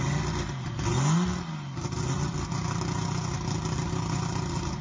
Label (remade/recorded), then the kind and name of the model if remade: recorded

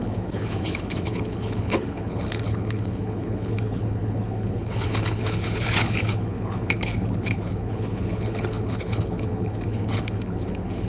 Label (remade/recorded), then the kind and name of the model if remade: remade, codec, HILCodec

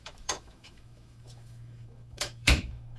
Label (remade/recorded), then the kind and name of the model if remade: remade, autoencoder, DAC-VAE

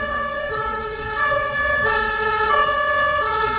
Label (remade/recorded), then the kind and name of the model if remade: remade, vocoder, WaveNeXt